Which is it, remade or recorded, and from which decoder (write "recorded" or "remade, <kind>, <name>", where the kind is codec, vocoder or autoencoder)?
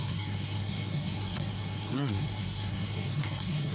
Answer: remade, codec, SNAC